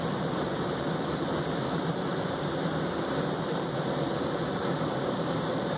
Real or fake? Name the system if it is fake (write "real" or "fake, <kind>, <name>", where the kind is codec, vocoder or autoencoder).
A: fake, vocoder, BigVGAN v2